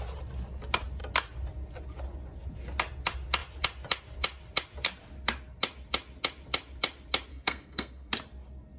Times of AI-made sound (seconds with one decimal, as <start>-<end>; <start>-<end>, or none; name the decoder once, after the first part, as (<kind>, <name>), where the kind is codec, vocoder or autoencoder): 7.3-8.1 (codec, SNAC)